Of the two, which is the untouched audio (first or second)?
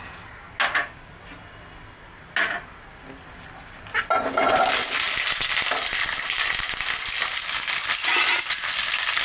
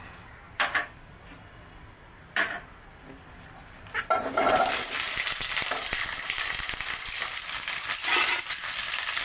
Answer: first